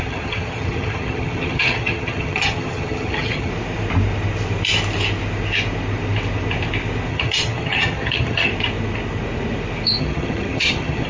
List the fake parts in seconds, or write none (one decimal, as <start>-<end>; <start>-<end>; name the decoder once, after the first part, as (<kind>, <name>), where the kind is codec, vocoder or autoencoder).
0.0-3.5 (vocoder, HiFi-GAN); 7.1-8.5; 10.0-11.1